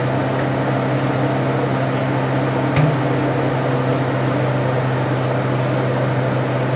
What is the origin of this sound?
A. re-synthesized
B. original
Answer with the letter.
B